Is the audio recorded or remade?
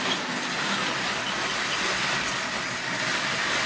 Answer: recorded